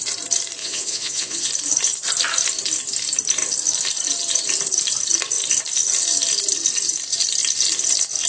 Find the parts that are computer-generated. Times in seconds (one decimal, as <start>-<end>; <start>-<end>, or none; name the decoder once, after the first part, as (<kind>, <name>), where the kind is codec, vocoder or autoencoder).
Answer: 0.6-1.5 (vocoder, Vocos)